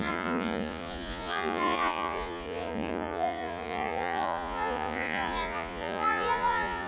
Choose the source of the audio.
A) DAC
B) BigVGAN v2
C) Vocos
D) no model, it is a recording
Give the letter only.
C